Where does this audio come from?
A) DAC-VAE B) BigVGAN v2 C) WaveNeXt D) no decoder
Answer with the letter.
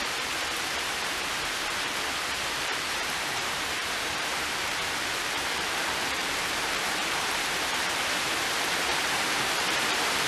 B